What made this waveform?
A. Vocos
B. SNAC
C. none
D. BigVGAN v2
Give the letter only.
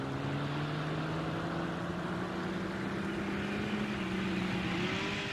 C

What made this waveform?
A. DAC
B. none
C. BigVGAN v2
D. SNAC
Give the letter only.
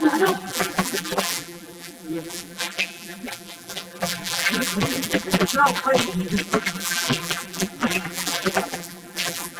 C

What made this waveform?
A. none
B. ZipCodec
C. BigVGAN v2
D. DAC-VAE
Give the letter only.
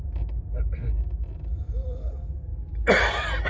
A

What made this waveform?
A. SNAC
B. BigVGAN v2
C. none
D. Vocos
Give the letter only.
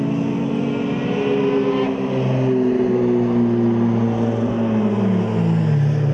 C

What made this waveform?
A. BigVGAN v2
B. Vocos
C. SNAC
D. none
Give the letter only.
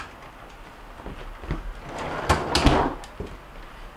D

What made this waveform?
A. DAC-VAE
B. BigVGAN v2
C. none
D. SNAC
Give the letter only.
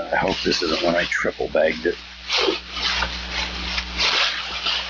C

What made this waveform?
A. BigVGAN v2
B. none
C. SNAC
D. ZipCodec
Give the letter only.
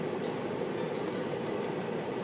B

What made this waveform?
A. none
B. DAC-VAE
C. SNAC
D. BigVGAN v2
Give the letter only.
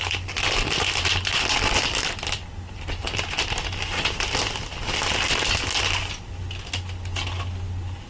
A